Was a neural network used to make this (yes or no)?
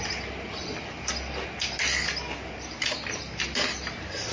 no